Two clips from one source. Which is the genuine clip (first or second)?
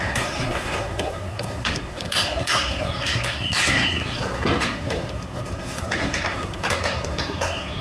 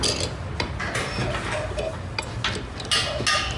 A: second